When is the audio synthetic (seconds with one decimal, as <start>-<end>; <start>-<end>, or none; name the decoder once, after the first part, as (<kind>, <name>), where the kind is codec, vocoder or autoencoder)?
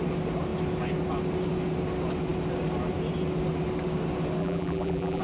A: 4.4-5.2 (vocoder, BigVGAN v2)